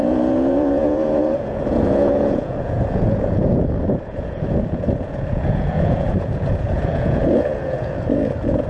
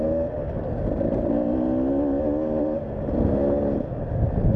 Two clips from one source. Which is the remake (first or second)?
first